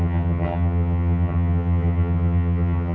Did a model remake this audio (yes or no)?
yes